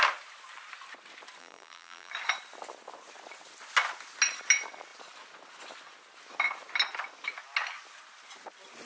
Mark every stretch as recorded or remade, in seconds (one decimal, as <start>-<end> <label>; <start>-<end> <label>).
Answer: 0.0-1.4 recorded; 1.4-2.1 remade; 2.1-8.9 recorded